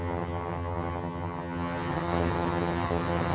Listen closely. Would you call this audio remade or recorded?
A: remade